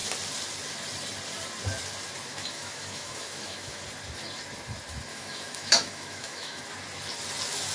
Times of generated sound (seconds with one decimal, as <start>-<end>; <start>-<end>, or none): 2.3-3.8; 5.1-6.6